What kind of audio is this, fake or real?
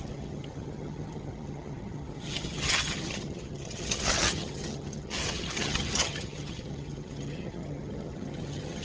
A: fake